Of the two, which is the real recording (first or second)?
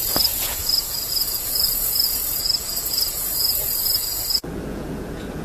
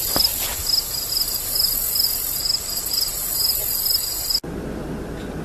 second